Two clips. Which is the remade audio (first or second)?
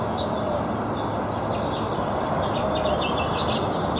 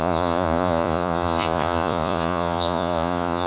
second